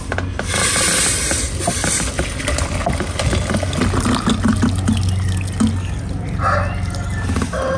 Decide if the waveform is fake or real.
real